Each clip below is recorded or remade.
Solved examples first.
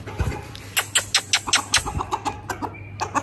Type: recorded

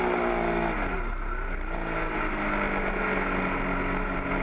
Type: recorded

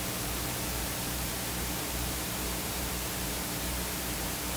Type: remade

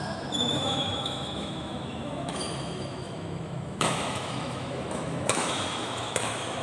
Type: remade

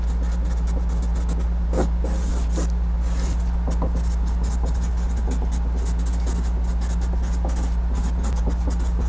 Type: recorded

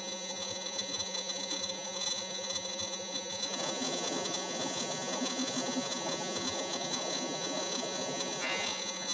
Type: remade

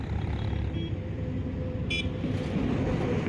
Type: recorded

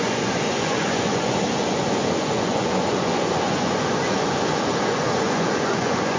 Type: remade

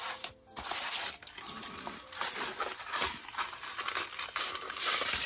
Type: recorded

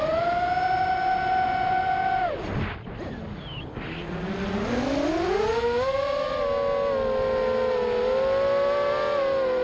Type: recorded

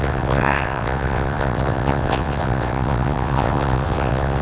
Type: remade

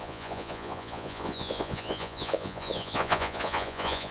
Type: remade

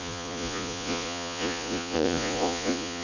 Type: remade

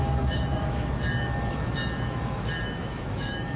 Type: remade